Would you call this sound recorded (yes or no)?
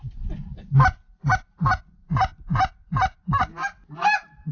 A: yes